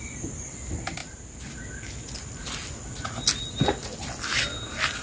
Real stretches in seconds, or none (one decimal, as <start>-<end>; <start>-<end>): 0.0-5.0